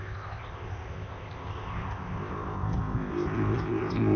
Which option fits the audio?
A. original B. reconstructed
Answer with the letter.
B